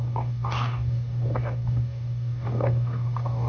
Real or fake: fake